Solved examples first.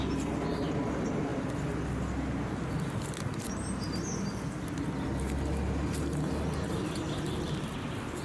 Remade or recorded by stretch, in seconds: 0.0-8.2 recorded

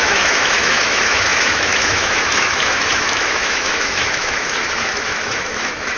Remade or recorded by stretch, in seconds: 0.0-6.0 remade

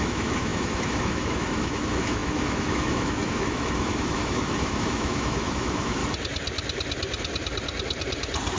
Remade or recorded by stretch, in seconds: 0.0-6.0 remade; 6.0-8.6 recorded